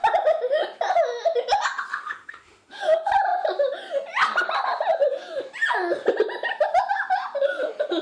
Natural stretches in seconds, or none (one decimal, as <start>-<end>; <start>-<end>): 0.0-1.9; 2.8-8.0